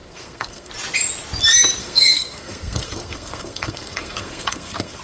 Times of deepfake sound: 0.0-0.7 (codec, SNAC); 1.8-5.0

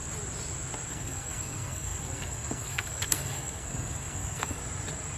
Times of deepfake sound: 0.9-4.6 (codec, SNAC)